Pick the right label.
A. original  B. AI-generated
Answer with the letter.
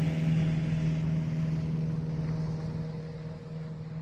A